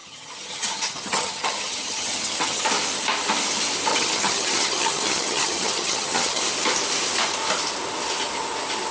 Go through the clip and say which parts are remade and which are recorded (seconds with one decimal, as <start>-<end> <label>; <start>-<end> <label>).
0.0-2.6 remade; 2.6-3.9 recorded; 3.9-6.4 remade; 6.4-8.9 recorded